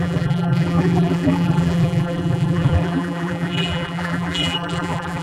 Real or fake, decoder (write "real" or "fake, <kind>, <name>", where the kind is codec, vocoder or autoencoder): fake, vocoder, BigVGAN v2